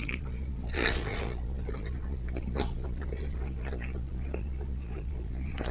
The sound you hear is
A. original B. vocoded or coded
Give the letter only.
B